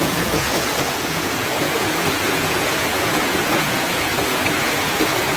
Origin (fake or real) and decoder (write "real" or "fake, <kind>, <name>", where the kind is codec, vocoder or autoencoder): fake, vocoder, Vocos